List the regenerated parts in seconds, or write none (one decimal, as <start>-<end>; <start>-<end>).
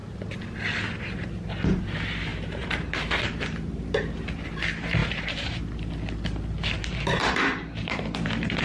2.3-3.9; 5.0-5.6; 7.2-8.6